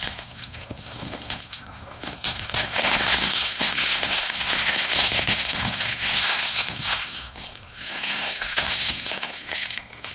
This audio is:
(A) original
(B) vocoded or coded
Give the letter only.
B